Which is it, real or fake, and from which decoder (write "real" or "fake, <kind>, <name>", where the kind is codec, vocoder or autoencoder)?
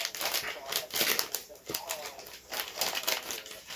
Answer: real